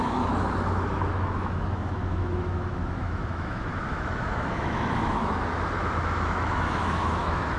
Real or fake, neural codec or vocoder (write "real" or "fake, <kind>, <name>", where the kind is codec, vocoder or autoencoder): fake, autoencoder, DAC-VAE